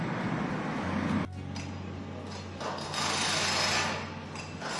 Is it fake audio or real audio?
real